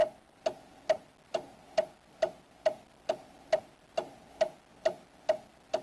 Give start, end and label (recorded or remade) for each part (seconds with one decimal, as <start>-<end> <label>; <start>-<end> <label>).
0.0-5.8 recorded